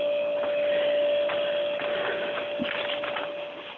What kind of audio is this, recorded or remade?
recorded